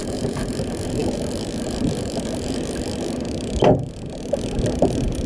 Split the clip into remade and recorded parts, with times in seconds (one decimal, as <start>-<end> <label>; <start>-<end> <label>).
0.0-0.5 remade; 0.5-5.3 recorded